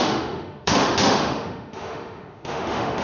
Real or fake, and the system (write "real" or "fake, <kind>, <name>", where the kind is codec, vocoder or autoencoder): fake, autoencoder, DAC-VAE